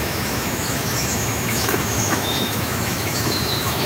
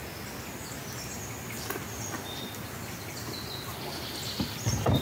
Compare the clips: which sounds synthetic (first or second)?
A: first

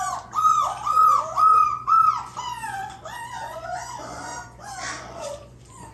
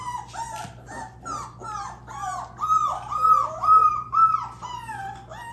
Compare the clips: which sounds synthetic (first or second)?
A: first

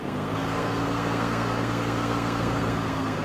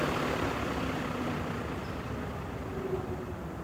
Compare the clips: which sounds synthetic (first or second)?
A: first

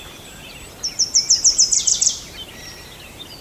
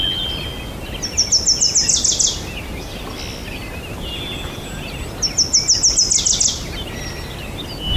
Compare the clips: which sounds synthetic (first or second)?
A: first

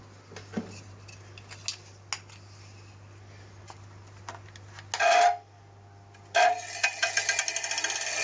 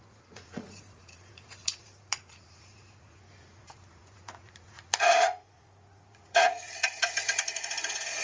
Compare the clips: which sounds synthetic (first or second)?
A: second